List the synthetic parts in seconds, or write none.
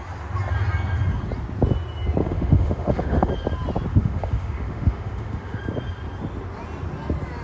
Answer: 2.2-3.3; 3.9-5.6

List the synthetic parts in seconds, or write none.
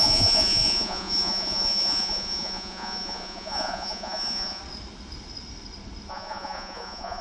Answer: 0.0-4.6; 6.1-7.2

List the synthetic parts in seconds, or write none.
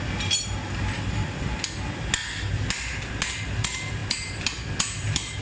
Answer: none